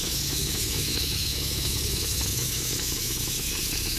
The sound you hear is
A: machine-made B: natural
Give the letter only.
A